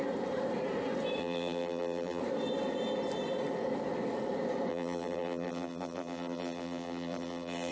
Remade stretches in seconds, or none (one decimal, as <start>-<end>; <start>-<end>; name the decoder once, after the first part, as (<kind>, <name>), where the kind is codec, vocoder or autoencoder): 1.2-2.2 (vocoder, BigVGAN v2); 4.7-7.7